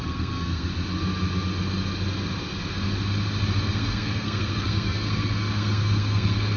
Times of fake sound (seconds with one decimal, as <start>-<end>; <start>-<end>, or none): 0.0-0.7; 3.6-6.6